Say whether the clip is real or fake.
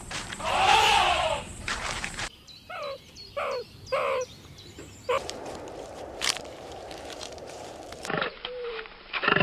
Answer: fake